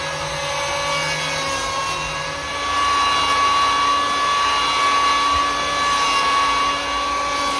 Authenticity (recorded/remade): recorded